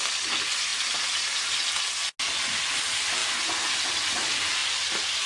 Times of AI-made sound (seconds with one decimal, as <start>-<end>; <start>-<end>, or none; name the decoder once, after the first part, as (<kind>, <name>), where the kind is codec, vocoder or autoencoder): none